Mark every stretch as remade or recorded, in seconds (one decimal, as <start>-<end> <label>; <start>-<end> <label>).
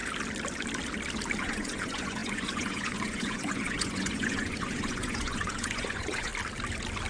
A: 0.0-1.4 recorded; 1.4-6.3 remade; 6.3-7.1 recorded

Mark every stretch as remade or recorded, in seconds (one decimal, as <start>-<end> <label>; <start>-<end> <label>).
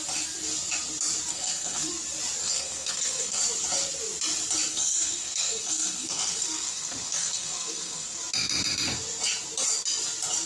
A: 0.0-1.3 recorded; 1.3-1.9 remade; 1.9-2.4 recorded; 2.4-3.4 remade; 3.4-4.7 recorded; 4.7-8.2 remade; 8.2-10.5 recorded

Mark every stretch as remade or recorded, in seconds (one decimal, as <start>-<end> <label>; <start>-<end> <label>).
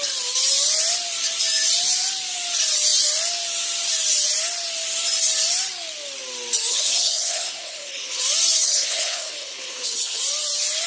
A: 0.0-6.7 recorded; 6.7-8.2 remade; 8.2-8.6 recorded; 8.6-10.2 remade; 10.2-10.9 recorded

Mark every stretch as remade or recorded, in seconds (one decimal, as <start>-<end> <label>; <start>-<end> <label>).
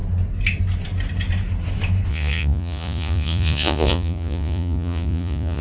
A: 0.0-2.1 recorded; 2.1-5.6 remade